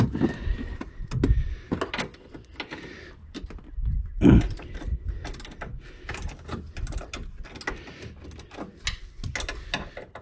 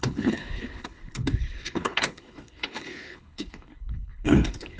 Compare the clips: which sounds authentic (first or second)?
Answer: first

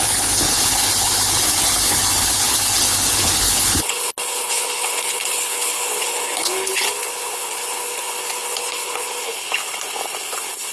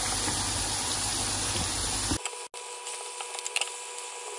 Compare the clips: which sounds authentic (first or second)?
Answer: second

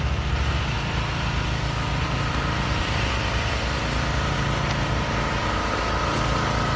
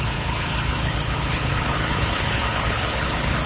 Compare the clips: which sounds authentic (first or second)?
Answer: first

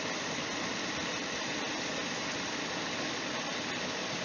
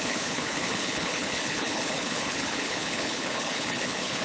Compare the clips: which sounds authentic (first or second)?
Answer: first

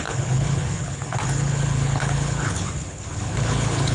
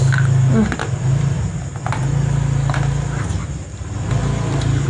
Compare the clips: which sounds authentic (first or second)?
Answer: second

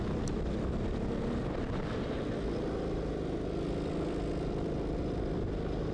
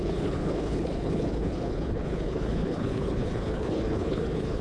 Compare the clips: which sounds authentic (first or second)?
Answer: first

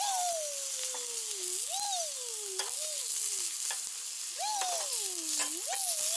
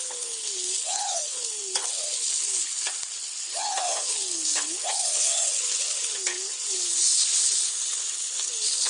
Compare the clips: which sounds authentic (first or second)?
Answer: first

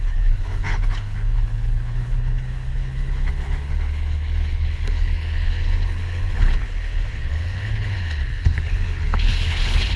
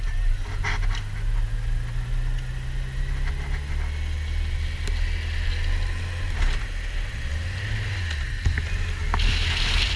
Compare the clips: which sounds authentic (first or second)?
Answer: second